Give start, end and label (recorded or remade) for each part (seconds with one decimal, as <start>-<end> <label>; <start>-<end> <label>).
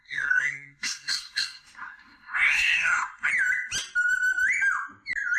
0.0-3.3 remade; 3.3-5.4 recorded